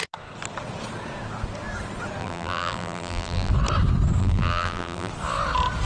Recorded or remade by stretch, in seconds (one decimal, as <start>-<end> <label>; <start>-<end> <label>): 0.0-2.2 recorded; 2.2-3.5 remade; 3.5-4.2 recorded; 4.2-5.1 remade; 5.1-5.9 recorded